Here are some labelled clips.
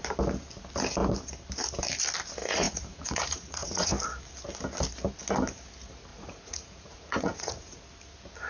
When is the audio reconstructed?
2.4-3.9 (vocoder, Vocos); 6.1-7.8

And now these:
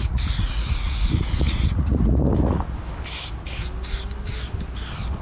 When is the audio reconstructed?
0.0-2.6 (vocoder, Vocos)

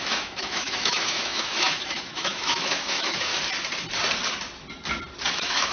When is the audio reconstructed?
0.0-3.3 (autoencoder, DAC-VAE); 5.3-5.7

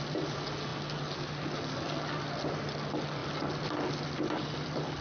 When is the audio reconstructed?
none

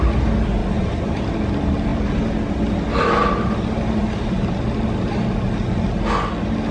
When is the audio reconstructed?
0.6-1.2 (vocoder, BigVGAN v2)

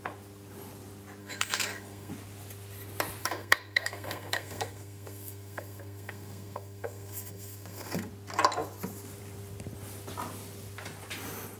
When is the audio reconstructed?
1.2-2.1 (codec, SNAC); 3.2-8.1

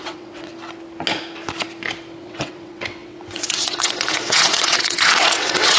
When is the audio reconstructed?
0.0-0.5 (vocoder, WaveNeXt); 2.2-5.8